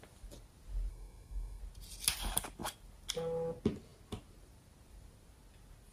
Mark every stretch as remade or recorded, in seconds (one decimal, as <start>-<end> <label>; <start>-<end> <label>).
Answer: 0.0-0.9 recorded; 0.9-1.6 remade; 1.6-5.9 recorded